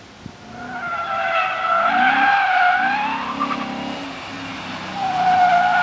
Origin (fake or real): real